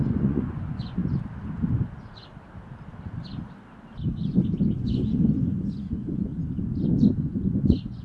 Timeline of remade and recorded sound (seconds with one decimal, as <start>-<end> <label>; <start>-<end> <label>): 0.0-1.0 remade; 1.0-4.8 recorded; 4.8-6.3 remade; 6.3-7.2 recorded; 7.2-8.0 remade